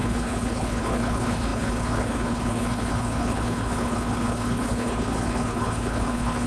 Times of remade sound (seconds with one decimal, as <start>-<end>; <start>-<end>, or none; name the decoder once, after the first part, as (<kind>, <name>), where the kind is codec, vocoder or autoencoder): 0.0-6.5 (codec, HILCodec)